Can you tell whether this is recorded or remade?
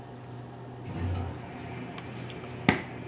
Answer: recorded